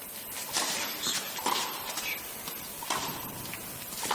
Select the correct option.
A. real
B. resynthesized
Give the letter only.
B